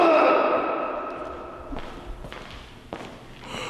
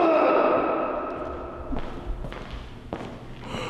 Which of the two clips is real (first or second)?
second